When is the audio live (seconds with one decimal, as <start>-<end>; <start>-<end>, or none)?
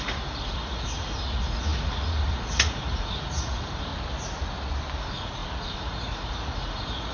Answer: 3.9-5.0